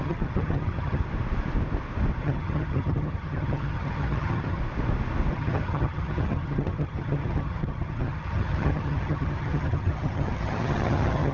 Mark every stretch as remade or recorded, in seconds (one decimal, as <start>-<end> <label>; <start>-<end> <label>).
0.0-1.0 remade; 1.0-2.2 recorded; 2.2-4.6 remade; 4.6-5.3 recorded; 5.3-11.3 remade